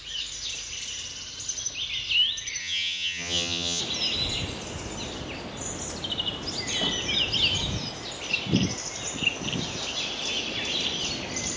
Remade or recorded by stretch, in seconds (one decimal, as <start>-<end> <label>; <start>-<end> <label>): 0.0-2.6 recorded; 2.6-3.8 remade; 3.8-11.6 recorded

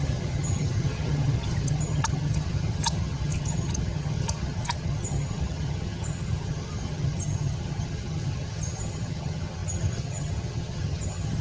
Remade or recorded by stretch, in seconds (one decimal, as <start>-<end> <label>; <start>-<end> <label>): 0.0-11.4 remade

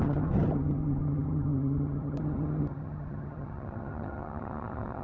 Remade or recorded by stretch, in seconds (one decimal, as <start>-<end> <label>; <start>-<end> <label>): 0.0-5.0 remade

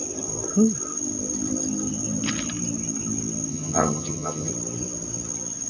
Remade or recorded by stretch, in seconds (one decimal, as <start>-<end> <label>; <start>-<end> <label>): 0.0-3.5 recorded; 3.5-4.5 remade; 4.5-5.7 recorded

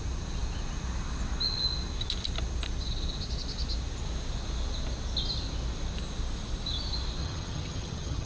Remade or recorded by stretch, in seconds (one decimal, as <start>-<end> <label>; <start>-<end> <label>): 0.0-7.2 recorded; 7.2-8.3 remade

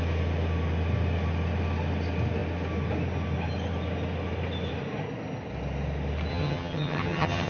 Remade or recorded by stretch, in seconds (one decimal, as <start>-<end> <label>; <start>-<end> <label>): 0.0-6.3 recorded; 6.3-7.5 remade

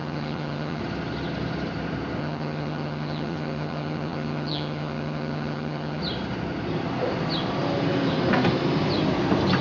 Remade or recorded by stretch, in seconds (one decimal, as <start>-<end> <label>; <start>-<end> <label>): 0.0-0.8 remade; 0.8-2.2 recorded; 2.2-6.0 remade; 6.0-9.6 recorded

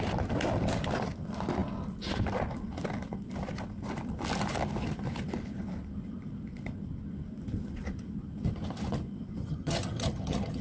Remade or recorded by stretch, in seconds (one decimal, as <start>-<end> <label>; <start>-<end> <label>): 0.0-9.4 recorded; 9.4-10.6 remade